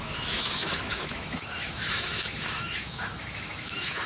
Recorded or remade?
remade